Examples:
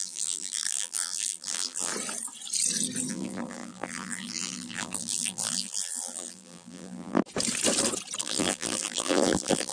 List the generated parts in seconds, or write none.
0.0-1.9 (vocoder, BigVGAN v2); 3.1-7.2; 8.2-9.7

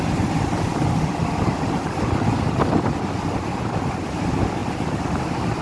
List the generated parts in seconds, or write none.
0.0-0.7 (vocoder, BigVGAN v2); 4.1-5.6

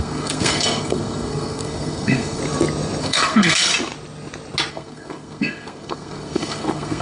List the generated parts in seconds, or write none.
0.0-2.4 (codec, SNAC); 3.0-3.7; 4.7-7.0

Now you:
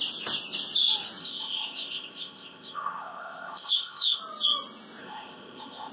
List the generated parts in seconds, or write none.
1.2-4.2 (codec, ZipCodec); 5.0-5.9